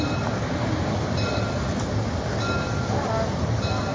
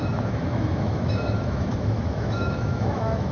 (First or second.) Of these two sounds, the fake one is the second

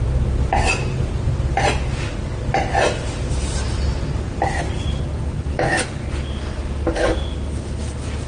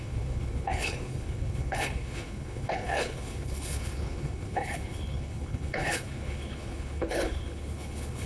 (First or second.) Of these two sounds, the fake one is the second